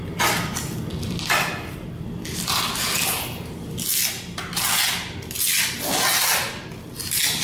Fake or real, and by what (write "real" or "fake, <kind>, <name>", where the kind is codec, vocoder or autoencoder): real